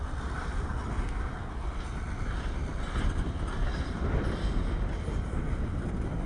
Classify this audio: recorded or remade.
recorded